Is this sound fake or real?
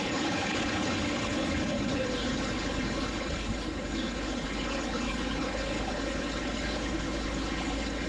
fake